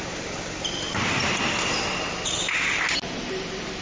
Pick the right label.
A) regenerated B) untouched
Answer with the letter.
B